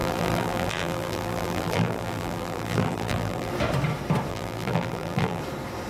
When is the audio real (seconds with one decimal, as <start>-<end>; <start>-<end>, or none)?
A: 3.5-4.3; 5.4-5.9